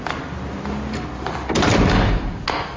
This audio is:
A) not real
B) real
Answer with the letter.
B